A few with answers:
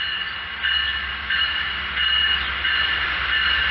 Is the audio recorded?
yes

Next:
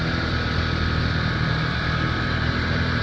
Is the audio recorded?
no